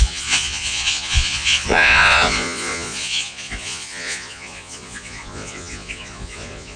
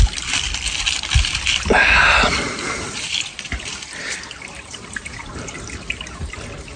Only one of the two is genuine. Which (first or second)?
second